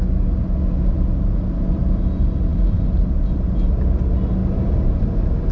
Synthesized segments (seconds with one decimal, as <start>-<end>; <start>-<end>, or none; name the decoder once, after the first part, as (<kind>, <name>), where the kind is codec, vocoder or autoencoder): 4.4-5.0 (vocoder, BigVGAN v2)